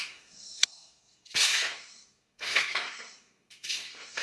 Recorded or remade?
remade